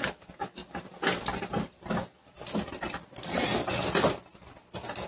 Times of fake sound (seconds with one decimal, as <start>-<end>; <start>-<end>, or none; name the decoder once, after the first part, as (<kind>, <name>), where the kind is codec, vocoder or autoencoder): 0.6-3.7 (vocoder, BigVGAN v2)